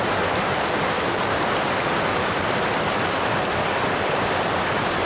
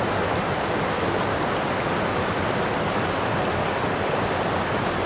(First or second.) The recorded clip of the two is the second